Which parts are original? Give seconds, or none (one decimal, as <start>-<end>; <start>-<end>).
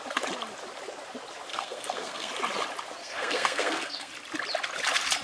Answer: 0.0-1.5; 2.3-3.0; 4.1-5.2